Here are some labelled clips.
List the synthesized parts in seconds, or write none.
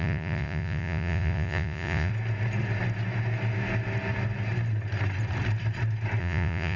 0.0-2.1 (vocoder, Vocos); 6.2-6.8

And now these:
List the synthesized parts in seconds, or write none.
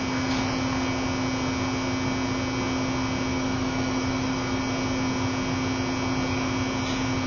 3.3-4.6 (autoencoder, DAC-VAE)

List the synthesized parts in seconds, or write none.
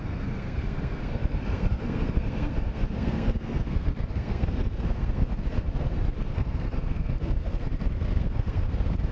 0.0-9.1 (codec, SNAC)